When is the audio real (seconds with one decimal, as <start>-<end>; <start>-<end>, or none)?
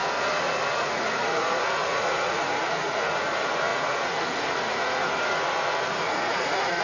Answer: none